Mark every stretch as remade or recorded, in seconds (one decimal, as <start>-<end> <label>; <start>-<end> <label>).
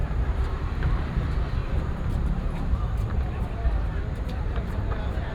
0.0-1.1 remade; 1.1-1.6 recorded; 1.6-4.8 remade; 4.8-5.3 recorded